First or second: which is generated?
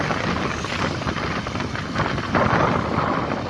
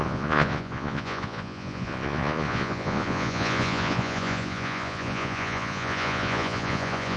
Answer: second